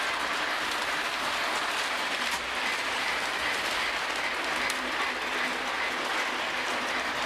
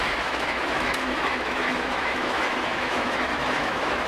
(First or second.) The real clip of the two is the first